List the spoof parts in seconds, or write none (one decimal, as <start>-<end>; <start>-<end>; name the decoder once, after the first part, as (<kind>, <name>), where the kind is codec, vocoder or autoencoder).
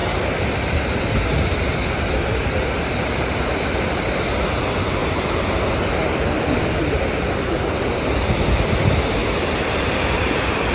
4.6-5.0 (vocoder, BigVGAN v2); 5.9-9.2; 9.8-10.7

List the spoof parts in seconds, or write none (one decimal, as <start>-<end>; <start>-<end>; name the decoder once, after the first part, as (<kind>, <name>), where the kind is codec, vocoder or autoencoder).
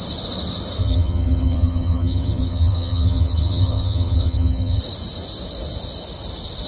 0.8-4.8 (vocoder, HiFi-GAN)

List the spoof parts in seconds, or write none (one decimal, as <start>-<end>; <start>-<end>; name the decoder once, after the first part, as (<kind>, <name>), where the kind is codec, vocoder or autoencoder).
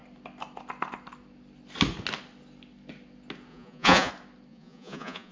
3.5-4.1 (vocoder, Vocos); 4.5-5.3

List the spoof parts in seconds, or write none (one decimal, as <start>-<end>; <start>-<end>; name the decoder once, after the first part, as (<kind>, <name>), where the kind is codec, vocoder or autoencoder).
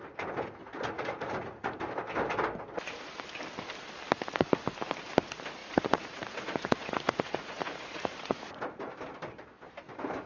0.6-1.8 (vocoder, Vocos); 5.6-8.9